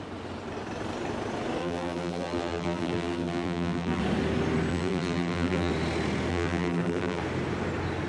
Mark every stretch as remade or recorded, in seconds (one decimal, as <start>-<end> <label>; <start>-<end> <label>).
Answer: 0.0-1.6 recorded; 1.6-4.0 remade; 4.0-4.7 recorded; 4.7-5.7 remade; 5.7-6.3 recorded; 6.3-7.2 remade; 7.2-8.1 recorded